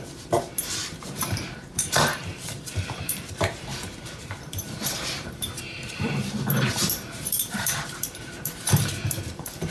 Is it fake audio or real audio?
fake